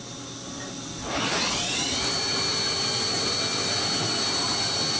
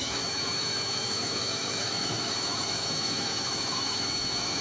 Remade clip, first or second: second